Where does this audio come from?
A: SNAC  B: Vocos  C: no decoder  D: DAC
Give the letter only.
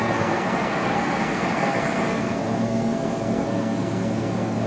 A